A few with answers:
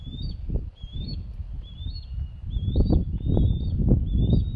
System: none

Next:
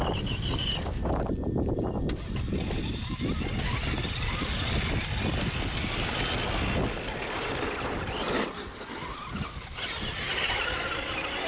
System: none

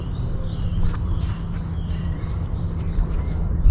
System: vocoder, BigVGAN v2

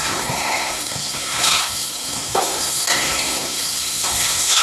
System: codec, SNAC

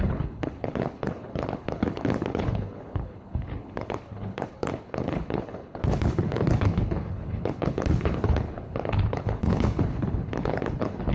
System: codec, HILCodec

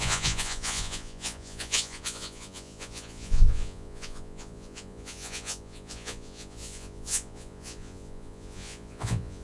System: vocoder, Vocos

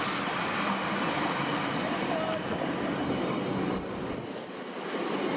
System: none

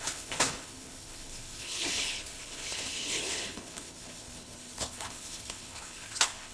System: codec, HILCodec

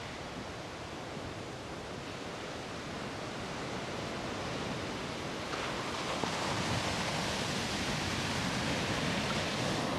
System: none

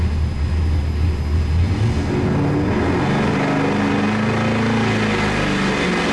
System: none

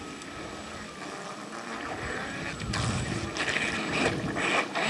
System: none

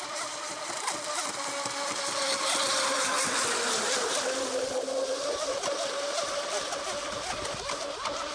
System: none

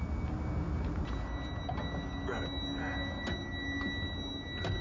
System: none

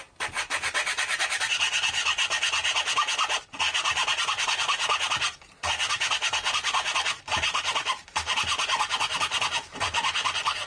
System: none